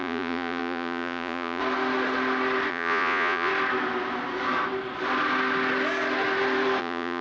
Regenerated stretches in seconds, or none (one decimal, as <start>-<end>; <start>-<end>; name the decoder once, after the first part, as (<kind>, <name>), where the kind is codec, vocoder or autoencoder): 0.0-1.6 (vocoder, Vocos); 2.7-3.5; 6.8-7.2